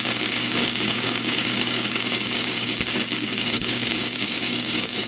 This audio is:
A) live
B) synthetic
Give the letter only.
B